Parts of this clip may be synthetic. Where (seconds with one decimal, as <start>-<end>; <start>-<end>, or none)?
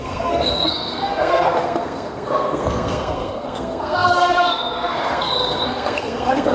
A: 0.0-6.5